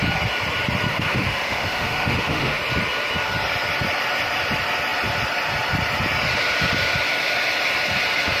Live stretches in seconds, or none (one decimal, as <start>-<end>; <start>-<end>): 0.0-0.9; 2.6-8.4